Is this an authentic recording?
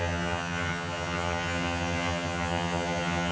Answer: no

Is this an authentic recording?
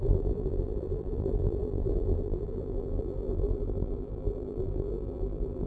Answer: no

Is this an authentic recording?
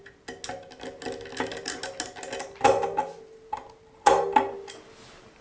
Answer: yes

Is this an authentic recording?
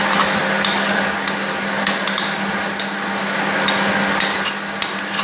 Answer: yes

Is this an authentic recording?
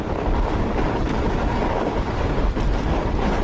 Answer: yes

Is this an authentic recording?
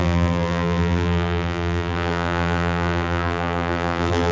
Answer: no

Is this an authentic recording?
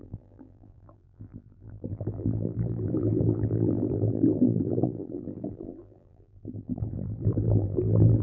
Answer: no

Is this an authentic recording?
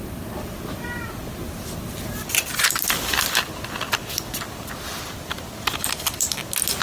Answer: yes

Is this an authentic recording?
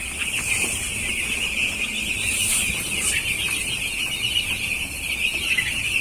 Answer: yes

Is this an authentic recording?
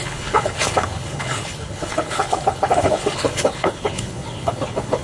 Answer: no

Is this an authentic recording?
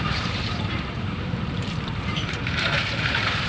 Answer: no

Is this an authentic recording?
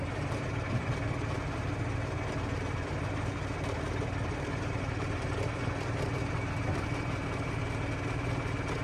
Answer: no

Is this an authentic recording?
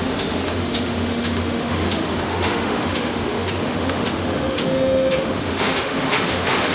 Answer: no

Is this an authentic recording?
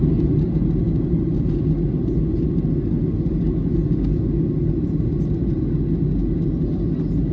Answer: yes